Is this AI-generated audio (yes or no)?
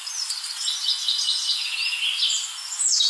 no